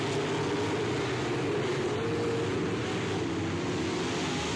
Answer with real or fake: real